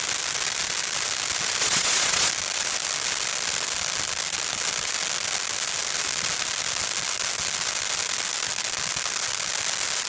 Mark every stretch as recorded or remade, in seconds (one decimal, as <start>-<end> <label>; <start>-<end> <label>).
0.0-1.6 recorded; 1.6-2.3 remade; 2.3-10.1 recorded